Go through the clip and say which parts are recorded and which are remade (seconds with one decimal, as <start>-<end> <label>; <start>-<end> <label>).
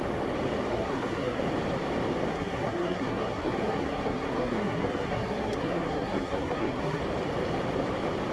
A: 0.0-0.7 recorded; 0.7-1.4 remade; 1.4-2.3 recorded; 2.3-7.0 remade; 7.0-8.3 recorded